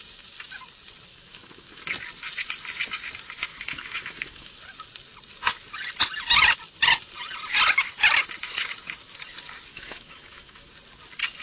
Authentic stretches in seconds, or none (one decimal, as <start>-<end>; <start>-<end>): 0.0-1.1; 1.8-3.5; 4.6-9.7; 10.7-11.4